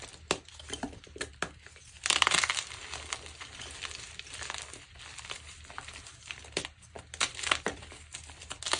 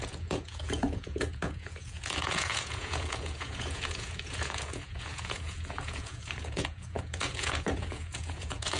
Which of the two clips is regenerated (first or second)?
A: second